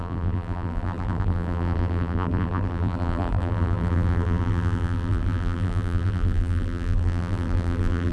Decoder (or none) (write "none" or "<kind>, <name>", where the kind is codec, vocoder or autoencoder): vocoder, BigVGAN v2